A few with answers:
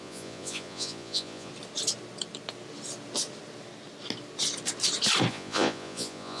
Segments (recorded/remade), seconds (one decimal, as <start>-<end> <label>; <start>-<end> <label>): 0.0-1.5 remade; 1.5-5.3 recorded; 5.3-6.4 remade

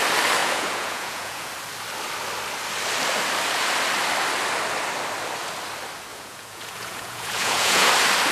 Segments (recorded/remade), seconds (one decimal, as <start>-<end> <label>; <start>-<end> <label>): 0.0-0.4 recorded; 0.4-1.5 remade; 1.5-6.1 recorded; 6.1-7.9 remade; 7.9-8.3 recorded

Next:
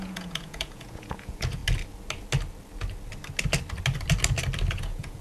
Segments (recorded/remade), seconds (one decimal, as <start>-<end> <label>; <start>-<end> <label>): 0.0-1.6 remade; 1.6-4.7 recorded; 4.7-5.2 remade

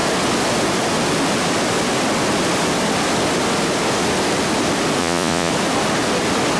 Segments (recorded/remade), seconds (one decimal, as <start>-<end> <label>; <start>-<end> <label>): 0.0-5.0 recorded; 5.0-5.5 remade; 5.5-6.6 recorded